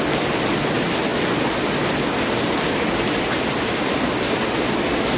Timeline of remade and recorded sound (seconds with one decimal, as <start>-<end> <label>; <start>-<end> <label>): 0.0-5.2 recorded